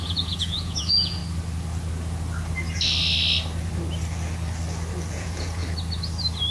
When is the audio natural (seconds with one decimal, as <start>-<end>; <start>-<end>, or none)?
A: 1.2-5.1; 5.6-6.5